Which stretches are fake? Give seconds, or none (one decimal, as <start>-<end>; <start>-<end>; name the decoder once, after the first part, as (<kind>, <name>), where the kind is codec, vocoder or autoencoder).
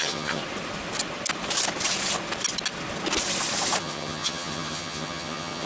0.0-0.4 (vocoder, HiFi-GAN); 3.8-5.7